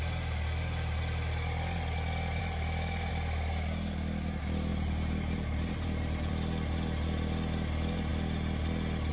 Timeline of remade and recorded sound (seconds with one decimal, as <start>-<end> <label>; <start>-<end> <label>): 0.0-4.7 recorded; 4.7-6.3 remade; 6.3-9.1 recorded